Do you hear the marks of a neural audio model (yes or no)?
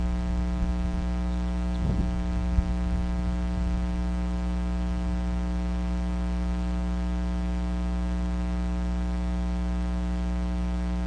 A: no